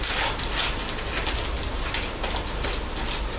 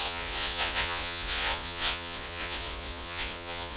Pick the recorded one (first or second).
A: first